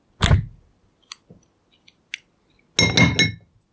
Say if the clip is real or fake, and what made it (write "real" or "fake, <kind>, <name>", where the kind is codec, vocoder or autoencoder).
real